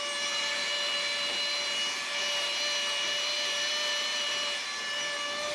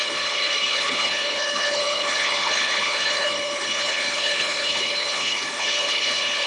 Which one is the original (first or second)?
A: first